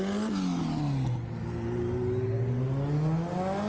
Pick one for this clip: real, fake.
real